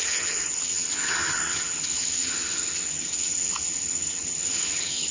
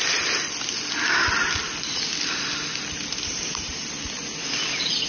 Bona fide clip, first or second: second